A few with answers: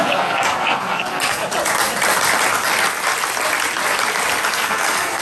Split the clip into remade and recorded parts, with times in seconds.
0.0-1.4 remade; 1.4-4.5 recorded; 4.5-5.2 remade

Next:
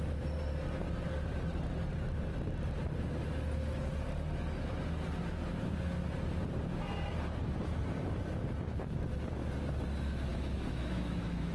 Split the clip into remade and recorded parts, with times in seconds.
0.0-10.3 recorded; 10.3-11.5 remade

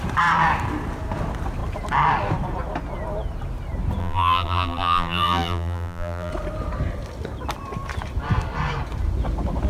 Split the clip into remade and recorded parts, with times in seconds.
0.0-4.0 recorded; 4.0-6.3 remade; 6.3-9.7 recorded

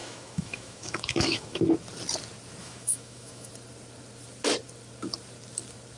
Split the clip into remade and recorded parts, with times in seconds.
0.0-1.6 remade; 1.6-2.6 recorded; 2.6-3.5 remade; 3.5-6.0 recorded